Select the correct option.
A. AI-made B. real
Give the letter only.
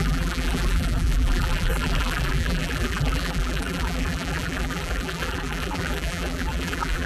A